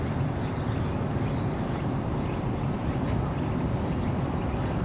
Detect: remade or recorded recorded